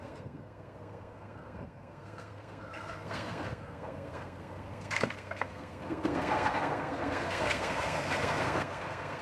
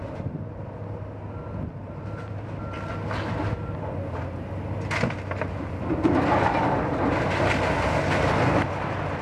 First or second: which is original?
second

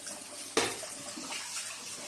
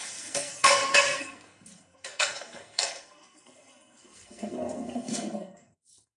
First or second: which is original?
first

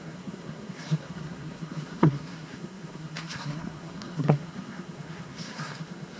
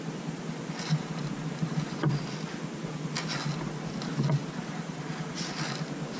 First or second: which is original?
second